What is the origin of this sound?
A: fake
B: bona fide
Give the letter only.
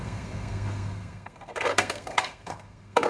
A